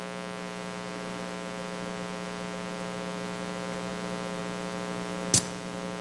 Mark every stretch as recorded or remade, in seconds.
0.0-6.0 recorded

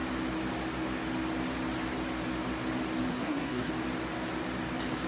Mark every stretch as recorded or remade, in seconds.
0.0-3.1 recorded; 3.1-3.7 remade; 3.7-5.1 recorded

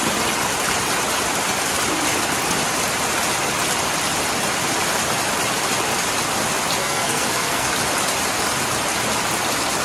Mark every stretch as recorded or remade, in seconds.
0.0-6.8 recorded; 6.8-7.7 remade; 7.7-9.8 recorded

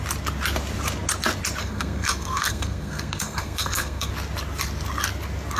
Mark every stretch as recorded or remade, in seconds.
0.0-1.6 recorded; 1.6-4.1 remade; 4.1-5.6 recorded

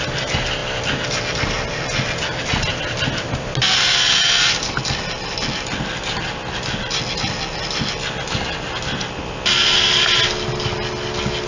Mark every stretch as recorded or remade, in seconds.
0.0-11.5 recorded

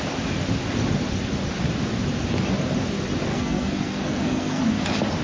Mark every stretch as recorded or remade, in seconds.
0.0-3.3 recorded; 3.3-4.6 remade; 4.6-5.2 recorded

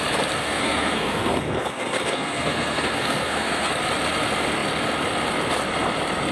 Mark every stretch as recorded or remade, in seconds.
0.0-0.4 recorded; 0.4-3.7 remade; 3.7-6.3 recorded